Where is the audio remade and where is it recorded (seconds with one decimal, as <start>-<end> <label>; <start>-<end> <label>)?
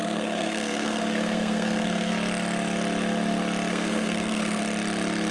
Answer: 0.0-2.1 remade; 2.1-3.7 recorded; 3.7-4.6 remade; 4.6-5.3 recorded